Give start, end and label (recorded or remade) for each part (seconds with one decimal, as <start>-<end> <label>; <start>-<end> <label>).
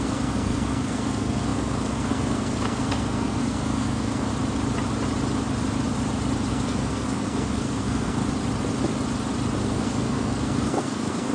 0.0-4.3 remade; 4.3-6.5 recorded; 6.5-8.2 remade; 8.2-9.6 recorded; 9.6-11.3 remade